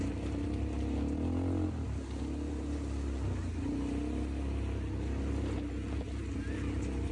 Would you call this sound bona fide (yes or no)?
yes